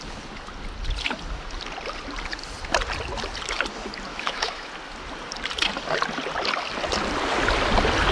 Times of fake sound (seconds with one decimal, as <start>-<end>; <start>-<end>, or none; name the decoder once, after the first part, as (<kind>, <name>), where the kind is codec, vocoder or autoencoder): 4.1-4.7 (autoencoder, DAC-VAE)